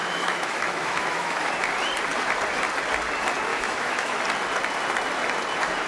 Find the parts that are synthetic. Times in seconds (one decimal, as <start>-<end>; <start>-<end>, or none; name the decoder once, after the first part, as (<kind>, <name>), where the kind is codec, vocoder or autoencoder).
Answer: 0.0-1.5 (autoencoder, DAC-VAE); 3.5-4.2